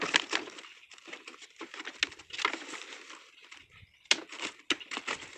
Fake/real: real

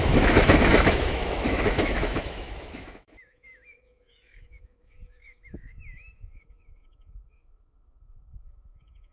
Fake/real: fake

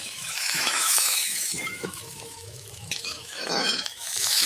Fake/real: fake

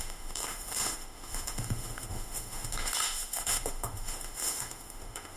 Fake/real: fake